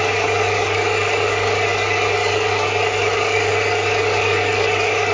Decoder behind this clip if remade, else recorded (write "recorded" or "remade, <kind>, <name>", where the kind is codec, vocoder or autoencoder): remade, codec, DAC